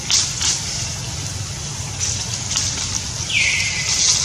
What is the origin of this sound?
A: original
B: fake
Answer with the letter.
A